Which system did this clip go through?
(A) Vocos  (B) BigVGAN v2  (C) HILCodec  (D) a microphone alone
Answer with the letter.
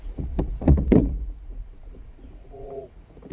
A